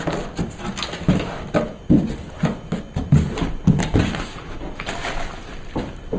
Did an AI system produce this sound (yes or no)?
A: no